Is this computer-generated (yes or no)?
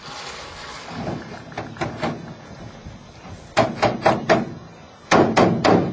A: no